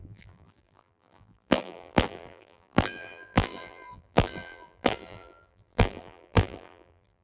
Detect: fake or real fake